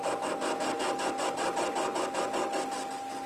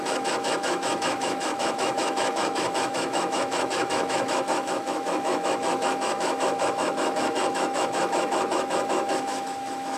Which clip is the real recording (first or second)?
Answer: first